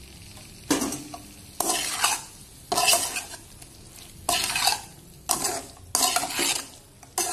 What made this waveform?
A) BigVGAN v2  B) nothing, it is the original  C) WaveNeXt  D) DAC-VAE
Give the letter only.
B